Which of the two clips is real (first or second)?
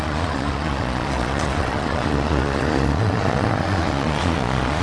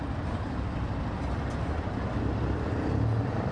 second